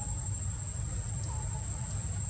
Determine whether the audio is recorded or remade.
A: recorded